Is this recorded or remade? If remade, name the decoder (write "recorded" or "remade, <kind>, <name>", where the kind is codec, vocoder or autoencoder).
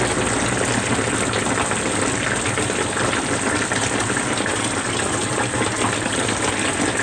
recorded